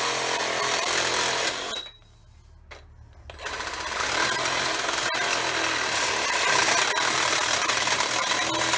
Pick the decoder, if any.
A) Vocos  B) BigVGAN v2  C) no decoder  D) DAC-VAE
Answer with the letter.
C